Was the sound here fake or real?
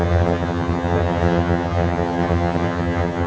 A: fake